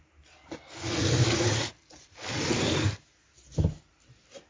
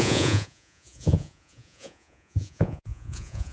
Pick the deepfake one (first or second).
second